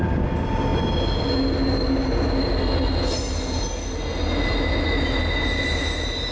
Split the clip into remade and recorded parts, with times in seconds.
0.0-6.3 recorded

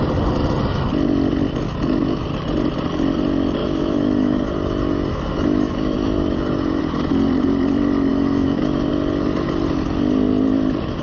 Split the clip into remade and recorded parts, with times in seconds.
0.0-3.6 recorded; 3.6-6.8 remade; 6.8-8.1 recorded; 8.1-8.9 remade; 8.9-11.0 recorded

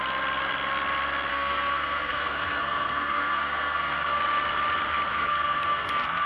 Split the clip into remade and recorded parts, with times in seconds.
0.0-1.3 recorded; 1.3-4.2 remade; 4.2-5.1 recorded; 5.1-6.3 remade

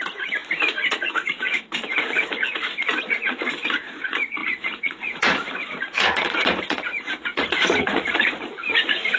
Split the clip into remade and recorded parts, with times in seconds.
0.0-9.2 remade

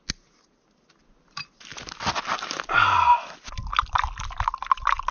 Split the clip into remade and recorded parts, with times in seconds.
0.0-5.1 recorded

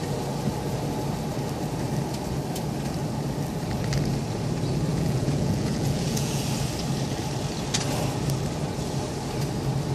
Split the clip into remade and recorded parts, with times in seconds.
0.0-4.9 recorded; 4.9-6.4 remade; 6.4-9.9 recorded